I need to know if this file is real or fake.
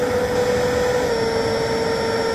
real